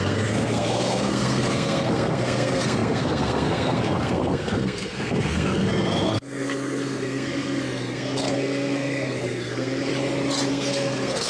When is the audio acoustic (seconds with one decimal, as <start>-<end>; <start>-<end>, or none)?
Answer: 9.9-10.5